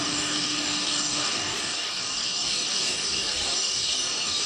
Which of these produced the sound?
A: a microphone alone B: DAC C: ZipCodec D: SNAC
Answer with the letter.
B